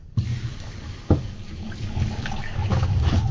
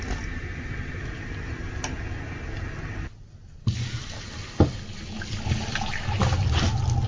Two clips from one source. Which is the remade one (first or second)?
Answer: first